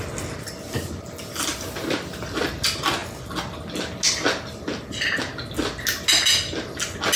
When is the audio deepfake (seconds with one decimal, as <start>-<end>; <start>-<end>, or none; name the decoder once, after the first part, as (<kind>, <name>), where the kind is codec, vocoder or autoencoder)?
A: none